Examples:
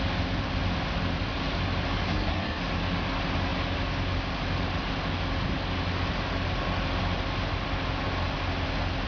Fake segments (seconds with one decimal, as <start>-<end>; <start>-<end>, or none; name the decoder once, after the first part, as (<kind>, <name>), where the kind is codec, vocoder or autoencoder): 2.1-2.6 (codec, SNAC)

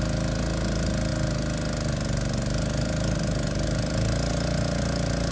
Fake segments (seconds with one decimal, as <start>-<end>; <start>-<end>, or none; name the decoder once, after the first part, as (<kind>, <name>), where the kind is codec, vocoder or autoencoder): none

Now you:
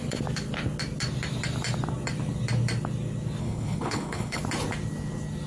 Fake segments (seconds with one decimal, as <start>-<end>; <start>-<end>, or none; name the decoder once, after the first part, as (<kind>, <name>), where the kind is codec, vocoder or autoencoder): 3.4-4.4 (codec, HILCodec)

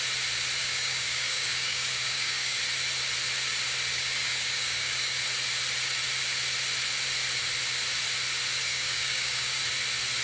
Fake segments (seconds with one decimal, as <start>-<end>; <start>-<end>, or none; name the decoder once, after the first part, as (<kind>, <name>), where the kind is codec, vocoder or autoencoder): 0.6-2.6 (codec, DAC); 3.9-5.2; 8.7-9.6

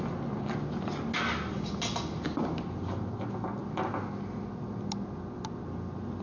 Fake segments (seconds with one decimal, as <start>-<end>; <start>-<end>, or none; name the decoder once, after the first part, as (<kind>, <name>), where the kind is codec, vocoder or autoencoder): none

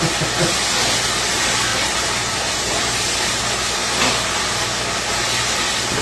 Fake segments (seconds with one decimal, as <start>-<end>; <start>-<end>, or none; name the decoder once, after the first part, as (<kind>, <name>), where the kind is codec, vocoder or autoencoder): 1.7-3.4 (vocoder, BigVGAN v2)

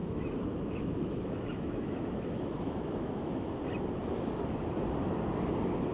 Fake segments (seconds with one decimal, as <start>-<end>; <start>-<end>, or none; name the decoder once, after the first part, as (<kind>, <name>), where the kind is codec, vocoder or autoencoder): 0.0-3.5 (autoencoder, DAC-VAE)